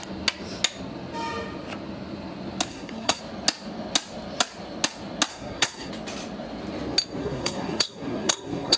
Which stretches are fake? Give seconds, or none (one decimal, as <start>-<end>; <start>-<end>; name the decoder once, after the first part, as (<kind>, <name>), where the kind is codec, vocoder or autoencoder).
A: 2.7-3.2 (codec, SNAC); 5.3-5.9; 7.2-8.8